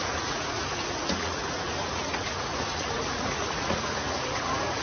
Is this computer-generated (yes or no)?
yes